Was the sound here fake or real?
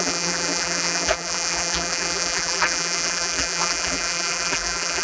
fake